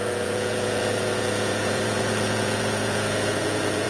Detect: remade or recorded remade